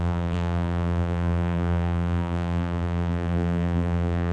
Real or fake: fake